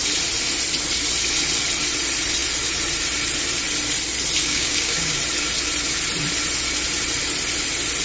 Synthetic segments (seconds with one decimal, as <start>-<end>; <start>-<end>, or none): 4.4-5.2